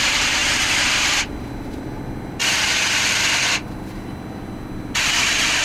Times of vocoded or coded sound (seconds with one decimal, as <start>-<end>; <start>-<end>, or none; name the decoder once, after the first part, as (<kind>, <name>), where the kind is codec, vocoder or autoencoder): 0.4-1.8 (vocoder, BigVGAN v2)